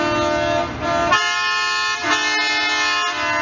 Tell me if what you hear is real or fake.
real